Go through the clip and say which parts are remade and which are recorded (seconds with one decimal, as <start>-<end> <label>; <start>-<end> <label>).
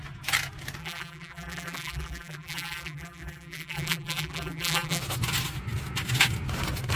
0.0-0.8 recorded; 0.8-5.0 remade; 5.0-7.0 recorded